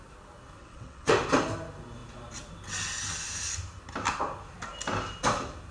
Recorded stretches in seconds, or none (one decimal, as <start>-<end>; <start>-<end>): 0.0-0.6; 1.1-5.7